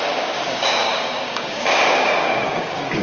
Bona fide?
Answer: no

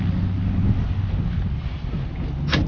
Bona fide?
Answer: yes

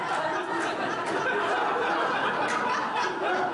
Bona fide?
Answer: yes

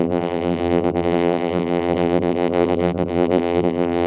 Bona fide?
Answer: no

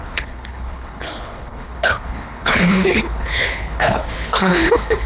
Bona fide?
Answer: no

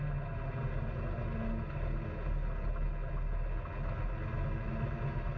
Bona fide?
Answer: yes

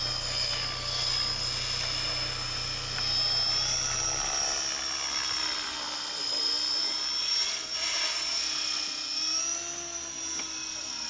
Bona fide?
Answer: yes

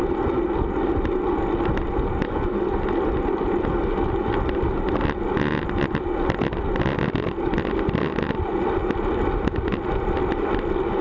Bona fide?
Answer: yes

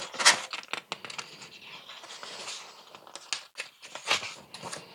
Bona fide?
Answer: yes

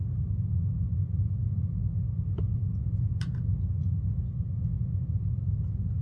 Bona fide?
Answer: yes